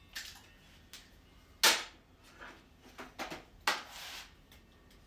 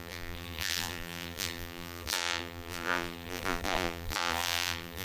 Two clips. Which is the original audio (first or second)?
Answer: first